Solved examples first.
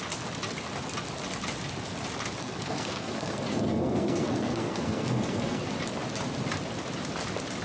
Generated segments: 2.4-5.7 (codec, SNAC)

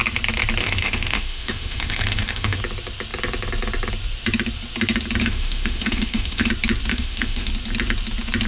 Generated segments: 0.6-2.6 (autoencoder, DAC-VAE); 5.2-6.5; 6.9-7.5

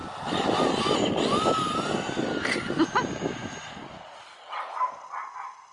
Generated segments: none